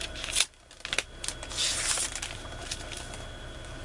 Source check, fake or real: real